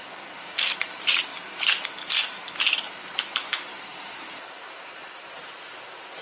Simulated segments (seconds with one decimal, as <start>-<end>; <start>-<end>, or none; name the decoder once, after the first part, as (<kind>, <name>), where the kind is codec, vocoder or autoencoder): 0.8-1.3 (vocoder, BigVGAN v2); 3.0-6.2